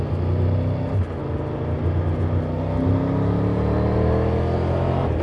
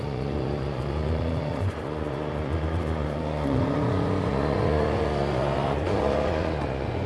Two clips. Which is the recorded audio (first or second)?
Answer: first